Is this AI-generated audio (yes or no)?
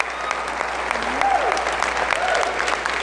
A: no